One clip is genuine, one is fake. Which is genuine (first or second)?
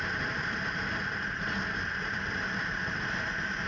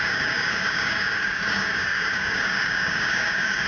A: first